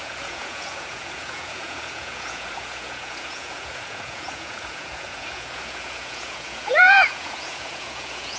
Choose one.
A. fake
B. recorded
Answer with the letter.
A